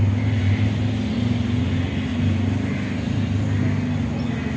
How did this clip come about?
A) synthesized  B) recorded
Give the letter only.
B